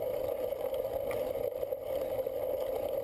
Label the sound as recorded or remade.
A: recorded